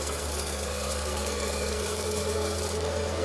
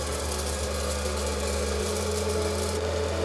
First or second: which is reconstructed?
first